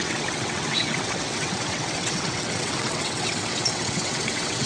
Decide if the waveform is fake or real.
fake